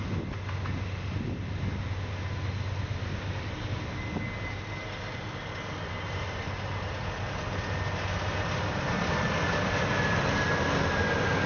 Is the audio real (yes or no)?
yes